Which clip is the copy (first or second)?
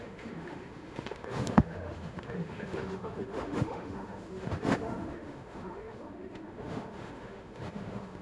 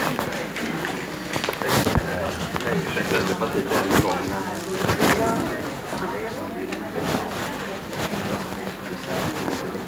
first